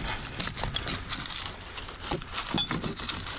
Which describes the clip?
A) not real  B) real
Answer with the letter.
B